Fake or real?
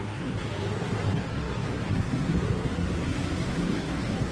fake